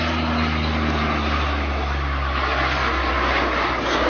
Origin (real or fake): real